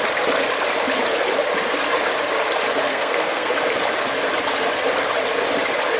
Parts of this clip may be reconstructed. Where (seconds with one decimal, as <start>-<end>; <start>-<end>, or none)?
2.9-3.5